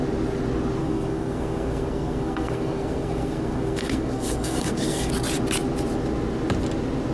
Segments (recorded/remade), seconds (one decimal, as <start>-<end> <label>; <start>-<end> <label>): 0.0-0.8 recorded; 0.8-5.1 remade; 5.1-7.1 recorded